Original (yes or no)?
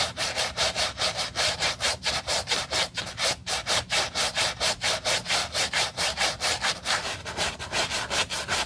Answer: no